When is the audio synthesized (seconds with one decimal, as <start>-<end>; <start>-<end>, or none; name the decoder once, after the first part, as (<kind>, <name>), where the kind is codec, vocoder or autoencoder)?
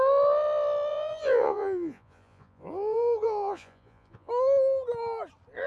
0.9-4.3 (vocoder, Vocos)